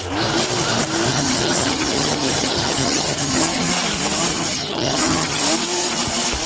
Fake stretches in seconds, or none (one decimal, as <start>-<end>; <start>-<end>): 1.1-3.7; 4.3-5.4